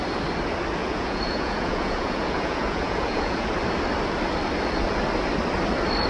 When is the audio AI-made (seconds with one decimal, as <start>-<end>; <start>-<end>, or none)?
0.8-3.5